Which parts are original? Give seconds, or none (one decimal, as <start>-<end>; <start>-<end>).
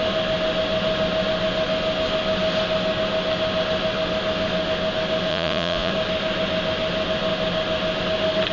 0.0-5.3; 5.9-8.5